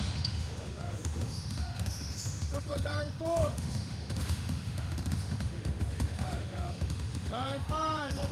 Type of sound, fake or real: fake